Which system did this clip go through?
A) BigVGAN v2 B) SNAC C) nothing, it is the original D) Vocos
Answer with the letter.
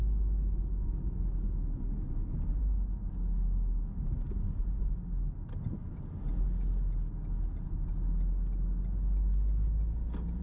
C